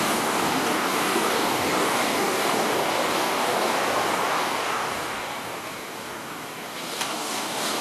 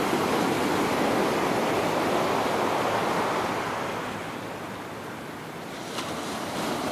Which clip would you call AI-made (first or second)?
first